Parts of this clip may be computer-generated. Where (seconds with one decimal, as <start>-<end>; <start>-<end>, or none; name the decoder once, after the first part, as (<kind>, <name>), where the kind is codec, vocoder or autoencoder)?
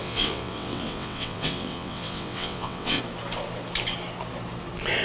0.0-3.0 (vocoder, WaveNeXt)